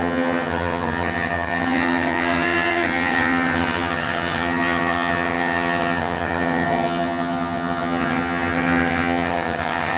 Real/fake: fake